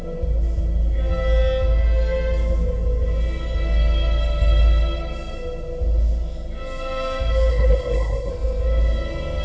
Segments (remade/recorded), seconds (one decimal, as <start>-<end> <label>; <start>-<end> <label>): 0.0-7.5 recorded; 7.5-8.3 remade; 8.3-9.4 recorded